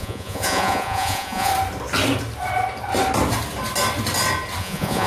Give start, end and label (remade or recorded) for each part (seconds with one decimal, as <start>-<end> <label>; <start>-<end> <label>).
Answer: 0.0-1.5 remade; 1.5-4.6 recorded; 4.6-5.1 remade